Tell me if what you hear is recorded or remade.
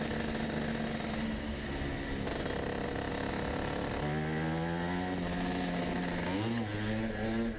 recorded